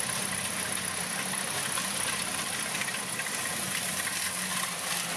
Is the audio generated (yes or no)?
yes